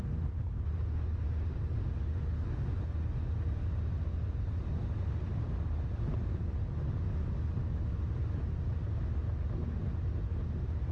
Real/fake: real